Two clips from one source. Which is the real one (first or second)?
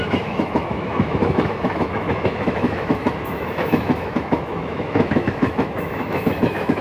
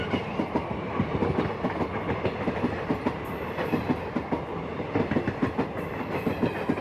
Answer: second